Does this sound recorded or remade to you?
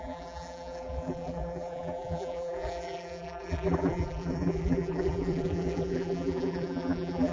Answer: remade